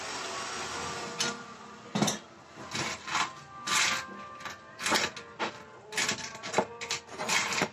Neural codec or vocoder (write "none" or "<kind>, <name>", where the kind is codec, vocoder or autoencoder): none